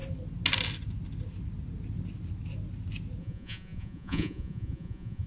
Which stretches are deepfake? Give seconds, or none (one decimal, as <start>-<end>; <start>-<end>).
3.2-5.3